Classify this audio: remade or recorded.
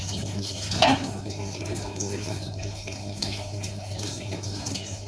remade